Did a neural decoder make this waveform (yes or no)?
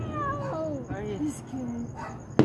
no